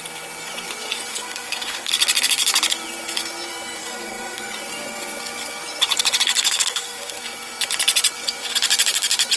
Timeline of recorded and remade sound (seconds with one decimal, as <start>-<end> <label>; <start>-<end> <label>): 0.0-1.1 recorded; 1.1-1.9 remade; 1.9-3.8 recorded; 3.8-4.4 remade; 4.4-6.4 recorded; 6.4-7.2 remade; 7.2-9.4 recorded